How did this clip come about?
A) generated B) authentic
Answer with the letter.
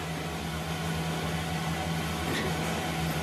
B